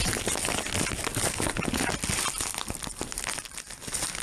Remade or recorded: recorded